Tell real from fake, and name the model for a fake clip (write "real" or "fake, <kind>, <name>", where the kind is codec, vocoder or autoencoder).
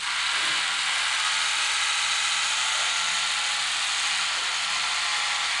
real